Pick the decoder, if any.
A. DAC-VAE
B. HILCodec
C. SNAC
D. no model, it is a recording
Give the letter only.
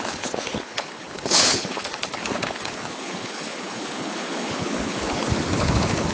B